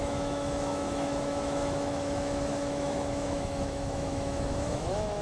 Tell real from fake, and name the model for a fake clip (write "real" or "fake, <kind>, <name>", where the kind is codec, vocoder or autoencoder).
fake, autoencoder, DAC-VAE